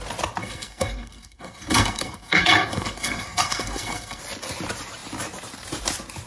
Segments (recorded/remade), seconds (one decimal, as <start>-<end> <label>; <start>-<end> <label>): 0.0-0.4 recorded; 0.4-4.2 remade; 4.2-6.3 recorded

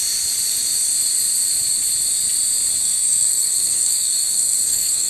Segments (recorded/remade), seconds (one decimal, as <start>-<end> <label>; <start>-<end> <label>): 0.0-2.8 recorded; 2.8-5.1 remade

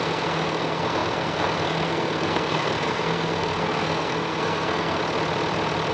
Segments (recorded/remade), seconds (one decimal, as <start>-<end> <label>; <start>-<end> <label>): 0.0-5.0 remade; 5.0-5.9 recorded

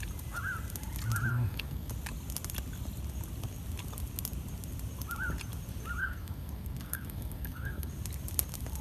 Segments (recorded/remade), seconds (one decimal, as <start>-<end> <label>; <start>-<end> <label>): 0.0-1.3 recorded; 1.3-1.9 remade; 1.9-6.0 recorded; 6.0-7.9 remade; 7.9-8.8 recorded

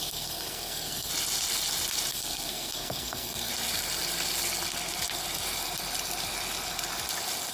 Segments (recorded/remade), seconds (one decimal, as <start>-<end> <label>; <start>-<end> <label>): 0.0-1.1 remade; 1.1-2.1 recorded; 2.1-3.5 remade; 3.5-7.5 recorded

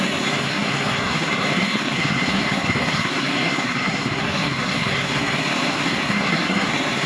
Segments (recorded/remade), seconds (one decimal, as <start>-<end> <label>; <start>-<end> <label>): 0.0-7.1 remade

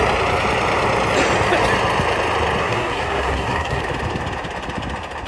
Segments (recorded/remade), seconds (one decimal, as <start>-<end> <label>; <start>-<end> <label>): 0.0-2.6 recorded; 2.6-3.8 remade; 3.8-5.3 recorded